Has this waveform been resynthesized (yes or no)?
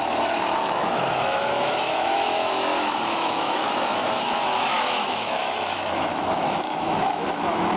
yes